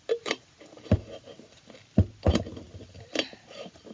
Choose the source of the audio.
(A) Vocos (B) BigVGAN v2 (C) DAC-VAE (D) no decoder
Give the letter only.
D